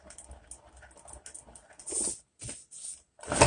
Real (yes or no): yes